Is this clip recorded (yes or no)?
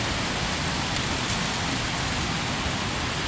yes